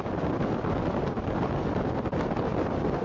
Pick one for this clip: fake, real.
real